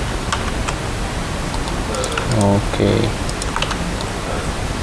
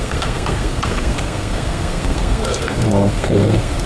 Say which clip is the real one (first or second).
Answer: first